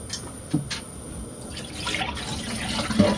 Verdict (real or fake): real